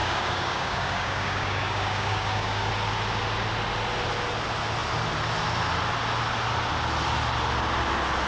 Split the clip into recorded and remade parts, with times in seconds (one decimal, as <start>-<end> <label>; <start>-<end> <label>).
0.0-2.7 remade; 2.7-8.3 recorded